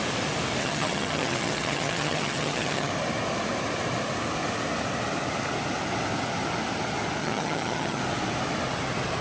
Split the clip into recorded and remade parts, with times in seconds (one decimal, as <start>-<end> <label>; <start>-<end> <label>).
0.0-0.6 recorded; 0.6-2.9 remade; 2.9-7.2 recorded; 7.2-8.0 remade; 8.0-9.2 recorded